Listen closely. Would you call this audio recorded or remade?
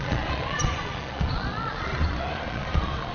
remade